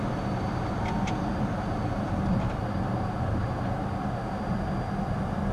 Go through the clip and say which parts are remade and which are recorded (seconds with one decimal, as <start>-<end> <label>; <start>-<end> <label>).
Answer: 0.0-0.6 recorded; 0.6-3.9 remade; 3.9-5.5 recorded